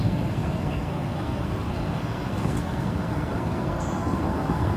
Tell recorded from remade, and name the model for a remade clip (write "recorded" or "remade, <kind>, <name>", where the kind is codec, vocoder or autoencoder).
remade, codec, SNAC